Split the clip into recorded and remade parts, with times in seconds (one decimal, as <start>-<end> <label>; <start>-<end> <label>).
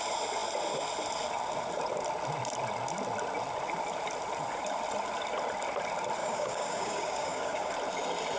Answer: 0.0-6.2 recorded; 6.2-7.7 remade; 7.7-8.4 recorded